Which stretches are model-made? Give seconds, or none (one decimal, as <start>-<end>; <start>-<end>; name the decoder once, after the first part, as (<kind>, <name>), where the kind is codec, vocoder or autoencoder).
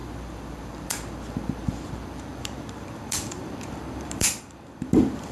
0.0-5.3 (vocoder, BigVGAN v2)